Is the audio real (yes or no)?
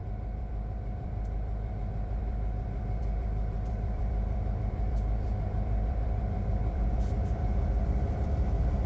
no